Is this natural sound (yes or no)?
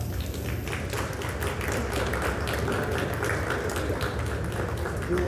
yes